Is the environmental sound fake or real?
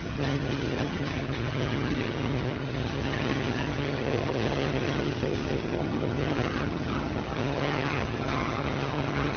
fake